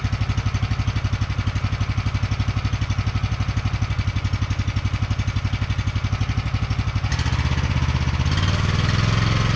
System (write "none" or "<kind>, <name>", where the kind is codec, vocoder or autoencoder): none